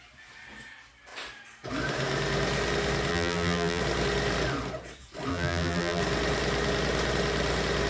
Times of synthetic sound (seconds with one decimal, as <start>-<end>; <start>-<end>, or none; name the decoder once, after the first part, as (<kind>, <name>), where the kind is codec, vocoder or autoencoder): 3.1-3.8 (vocoder, BigVGAN v2); 5.3-6.0